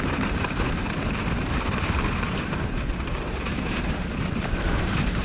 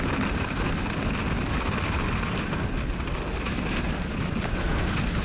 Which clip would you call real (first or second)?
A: second